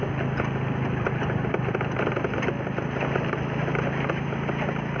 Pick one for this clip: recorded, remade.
recorded